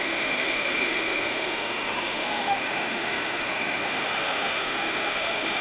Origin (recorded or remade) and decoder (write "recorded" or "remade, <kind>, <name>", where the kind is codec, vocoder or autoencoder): remade, autoencoder, DAC-VAE